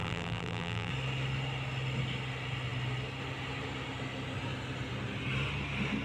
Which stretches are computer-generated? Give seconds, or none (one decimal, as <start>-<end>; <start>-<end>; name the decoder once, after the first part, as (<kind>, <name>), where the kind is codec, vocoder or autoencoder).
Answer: 0.0-0.9 (vocoder, BigVGAN v2)